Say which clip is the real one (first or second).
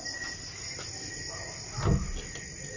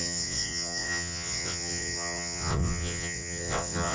first